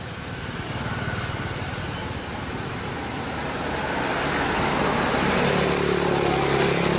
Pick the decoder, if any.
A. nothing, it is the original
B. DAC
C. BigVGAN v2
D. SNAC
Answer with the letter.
A